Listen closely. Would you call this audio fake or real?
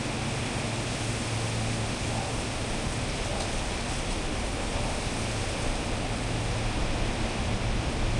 real